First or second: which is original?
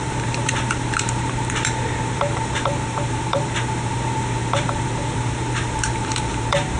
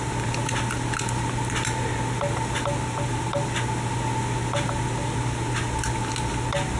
second